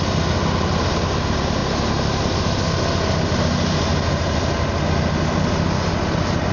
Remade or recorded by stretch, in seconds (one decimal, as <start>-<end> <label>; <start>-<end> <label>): 0.0-6.5 recorded